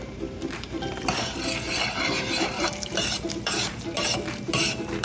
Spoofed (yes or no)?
yes